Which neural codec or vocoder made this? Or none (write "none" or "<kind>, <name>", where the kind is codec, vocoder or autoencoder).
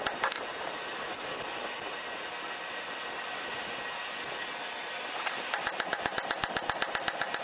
none